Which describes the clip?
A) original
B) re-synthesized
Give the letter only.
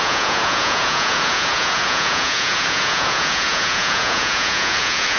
B